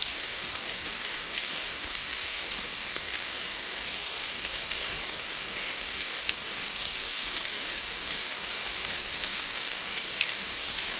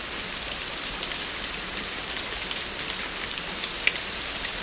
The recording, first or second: second